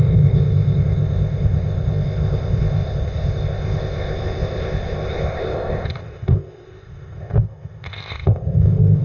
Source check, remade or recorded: remade